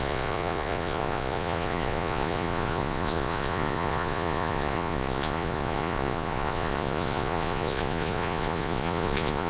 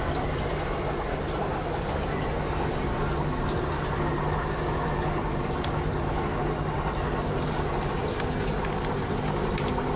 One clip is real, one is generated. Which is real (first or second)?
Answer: second